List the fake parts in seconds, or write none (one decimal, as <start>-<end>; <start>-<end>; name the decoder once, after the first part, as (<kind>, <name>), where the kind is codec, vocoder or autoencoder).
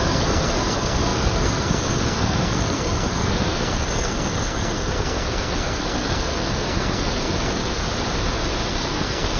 0.0-7.8 (codec, SNAC); 8.7-9.4